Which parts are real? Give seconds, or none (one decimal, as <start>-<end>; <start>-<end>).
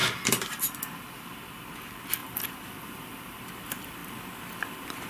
1.3-2.2; 3.4-5.1